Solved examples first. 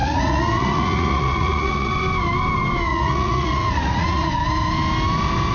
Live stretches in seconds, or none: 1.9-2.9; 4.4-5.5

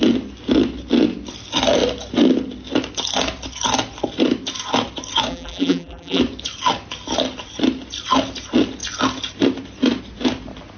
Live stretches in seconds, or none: 0.0-5.3; 6.2-10.8

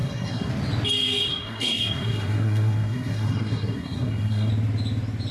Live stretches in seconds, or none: 0.5-1.3; 4.5-5.3